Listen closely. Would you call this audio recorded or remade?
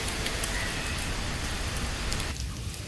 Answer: recorded